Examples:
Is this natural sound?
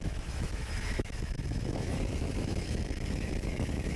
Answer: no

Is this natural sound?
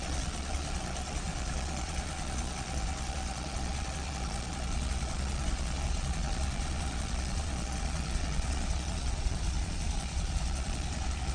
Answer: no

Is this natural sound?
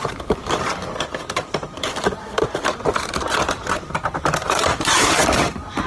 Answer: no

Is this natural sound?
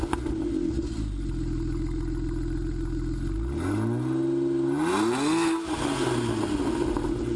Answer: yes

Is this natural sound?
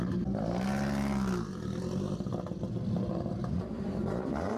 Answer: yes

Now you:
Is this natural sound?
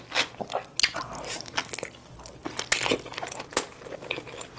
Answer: yes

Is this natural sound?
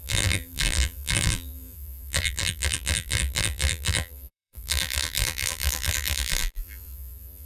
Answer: no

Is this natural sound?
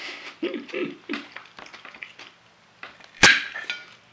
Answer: yes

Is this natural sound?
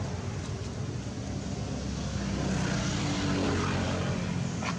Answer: yes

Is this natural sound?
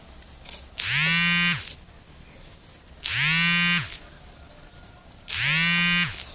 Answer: yes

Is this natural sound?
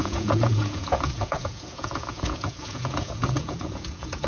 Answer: no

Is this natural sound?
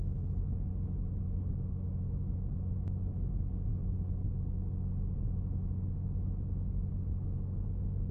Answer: yes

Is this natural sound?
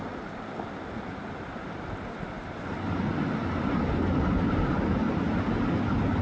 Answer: yes